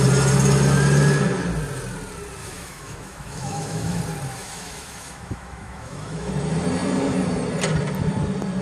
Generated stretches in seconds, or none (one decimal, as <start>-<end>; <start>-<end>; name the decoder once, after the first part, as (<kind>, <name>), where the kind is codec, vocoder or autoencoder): 2.4-4.0 (autoencoder, DAC-VAE); 4.4-6.3